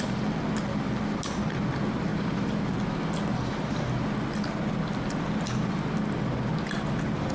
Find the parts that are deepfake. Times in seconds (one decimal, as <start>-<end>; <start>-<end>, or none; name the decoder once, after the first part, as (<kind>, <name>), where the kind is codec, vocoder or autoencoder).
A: none